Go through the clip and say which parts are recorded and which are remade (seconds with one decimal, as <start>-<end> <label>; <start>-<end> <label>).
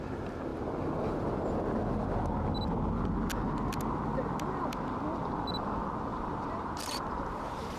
0.0-6.1 recorded; 6.1-7.8 remade